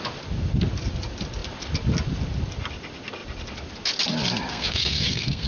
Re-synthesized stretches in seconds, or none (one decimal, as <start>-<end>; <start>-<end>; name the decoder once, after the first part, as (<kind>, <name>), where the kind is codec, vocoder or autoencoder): 4.5-5.5 (codec, SNAC)